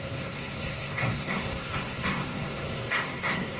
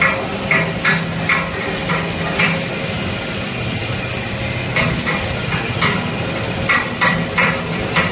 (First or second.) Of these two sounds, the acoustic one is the second